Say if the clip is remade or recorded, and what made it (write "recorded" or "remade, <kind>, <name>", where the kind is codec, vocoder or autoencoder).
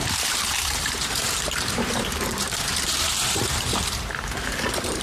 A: remade, vocoder, BigVGAN v2